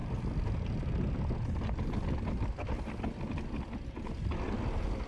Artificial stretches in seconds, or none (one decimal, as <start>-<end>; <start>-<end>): none